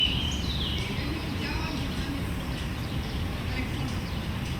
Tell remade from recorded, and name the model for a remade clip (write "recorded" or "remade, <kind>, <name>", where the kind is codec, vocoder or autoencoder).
remade, vocoder, BigVGAN v2